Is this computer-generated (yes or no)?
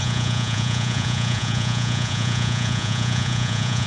yes